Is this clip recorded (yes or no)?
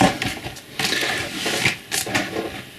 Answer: yes